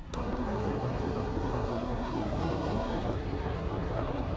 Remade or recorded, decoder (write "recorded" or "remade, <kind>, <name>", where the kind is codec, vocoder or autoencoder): remade, codec, SNAC